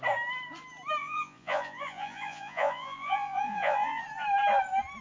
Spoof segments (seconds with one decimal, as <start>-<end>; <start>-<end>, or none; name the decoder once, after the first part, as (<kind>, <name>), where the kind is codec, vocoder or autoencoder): 1.0-4.0 (vocoder, Vocos)